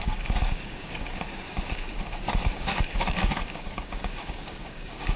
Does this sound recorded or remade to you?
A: remade